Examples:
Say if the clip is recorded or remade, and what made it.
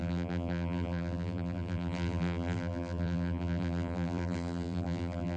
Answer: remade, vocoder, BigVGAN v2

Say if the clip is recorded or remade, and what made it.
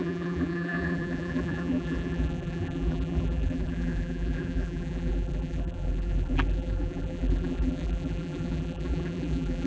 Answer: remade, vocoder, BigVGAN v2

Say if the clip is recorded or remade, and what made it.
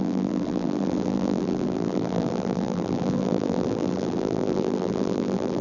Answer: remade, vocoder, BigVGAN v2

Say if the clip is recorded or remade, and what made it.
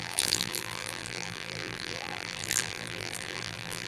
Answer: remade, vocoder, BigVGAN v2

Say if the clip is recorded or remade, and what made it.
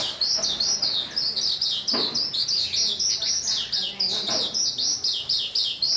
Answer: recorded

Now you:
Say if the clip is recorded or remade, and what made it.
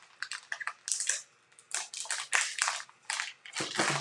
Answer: recorded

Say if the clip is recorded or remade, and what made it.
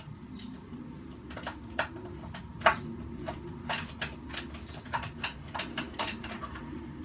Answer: recorded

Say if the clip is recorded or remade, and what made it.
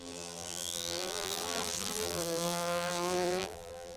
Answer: remade, vocoder, BigVGAN v2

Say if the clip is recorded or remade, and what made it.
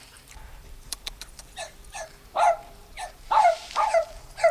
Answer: remade, vocoder, BigVGAN v2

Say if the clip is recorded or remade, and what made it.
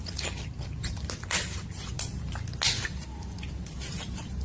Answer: recorded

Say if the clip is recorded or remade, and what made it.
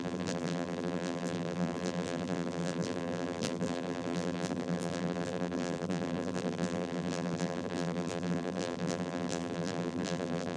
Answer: remade, vocoder, BigVGAN v2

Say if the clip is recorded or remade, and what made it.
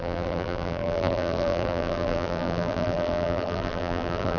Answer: remade, vocoder, BigVGAN v2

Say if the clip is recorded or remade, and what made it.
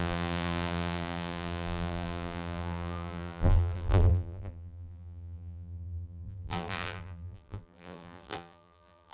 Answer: remade, vocoder, BigVGAN v2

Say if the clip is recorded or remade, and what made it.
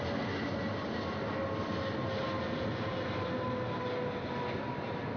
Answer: recorded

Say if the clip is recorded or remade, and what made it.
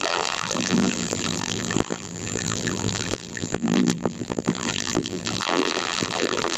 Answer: remade, vocoder, BigVGAN v2